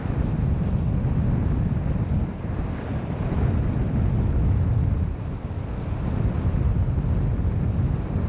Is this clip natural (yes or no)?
yes